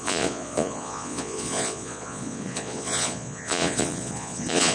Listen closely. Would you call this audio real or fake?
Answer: fake